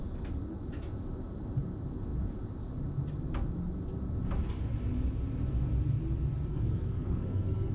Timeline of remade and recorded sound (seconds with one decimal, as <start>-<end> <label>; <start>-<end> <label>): 0.0-6.5 recorded; 6.5-7.7 remade